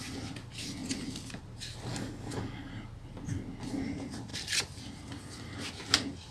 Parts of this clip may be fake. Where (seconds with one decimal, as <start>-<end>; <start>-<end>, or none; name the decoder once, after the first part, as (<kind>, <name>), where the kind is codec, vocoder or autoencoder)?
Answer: 1.9-2.7 (codec, DAC)